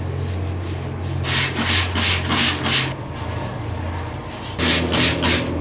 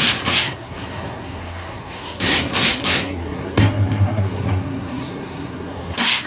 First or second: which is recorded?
first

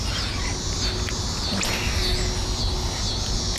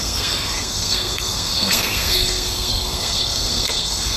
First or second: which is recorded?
first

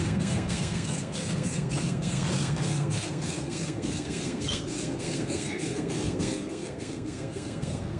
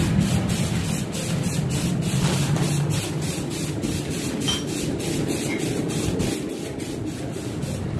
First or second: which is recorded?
second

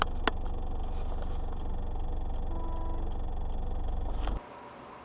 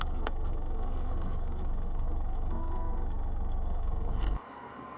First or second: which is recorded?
first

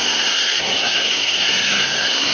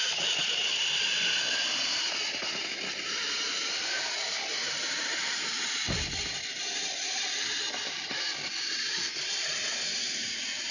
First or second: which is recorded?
second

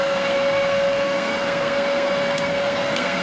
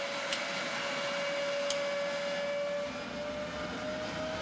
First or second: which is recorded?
second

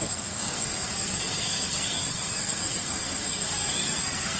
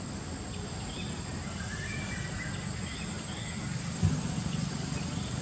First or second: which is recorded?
second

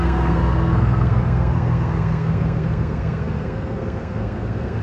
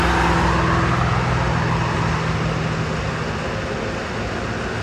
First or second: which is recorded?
second